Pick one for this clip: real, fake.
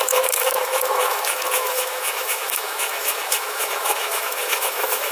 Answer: fake